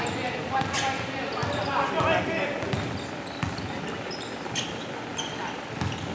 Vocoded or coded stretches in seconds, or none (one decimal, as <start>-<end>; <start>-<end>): none